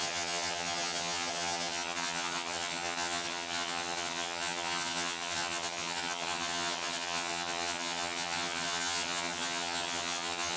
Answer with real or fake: fake